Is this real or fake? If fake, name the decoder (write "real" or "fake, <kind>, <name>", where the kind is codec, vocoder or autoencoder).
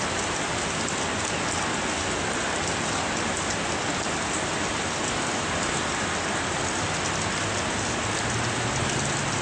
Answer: real